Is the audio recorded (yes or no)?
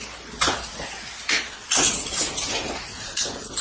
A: yes